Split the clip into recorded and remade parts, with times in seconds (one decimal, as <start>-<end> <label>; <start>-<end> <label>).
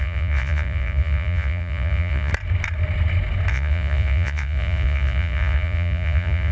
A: 0.0-2.3 remade; 2.3-3.5 recorded; 3.5-6.5 remade